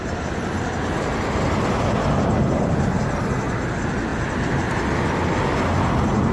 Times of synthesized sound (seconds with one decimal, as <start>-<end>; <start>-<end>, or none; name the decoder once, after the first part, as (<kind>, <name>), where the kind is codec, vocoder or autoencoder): none